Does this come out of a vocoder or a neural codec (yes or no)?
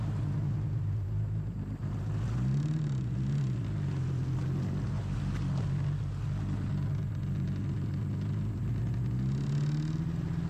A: no